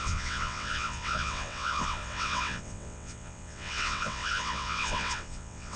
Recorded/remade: remade